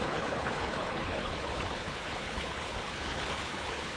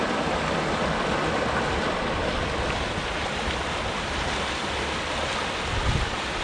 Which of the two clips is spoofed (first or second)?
first